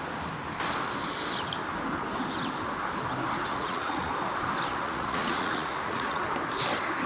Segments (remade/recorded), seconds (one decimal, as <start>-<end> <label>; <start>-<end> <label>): 0.0-3.5 recorded; 3.5-4.1 remade; 4.1-4.7 recorded; 4.7-6.2 remade; 6.2-7.1 recorded